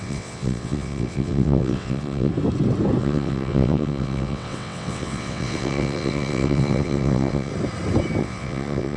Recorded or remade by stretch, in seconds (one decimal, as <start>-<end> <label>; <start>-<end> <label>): 0.0-2.3 remade; 2.3-3.0 recorded; 3.0-7.5 remade; 7.5-8.2 recorded; 8.2-9.0 remade